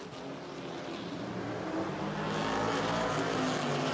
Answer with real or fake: real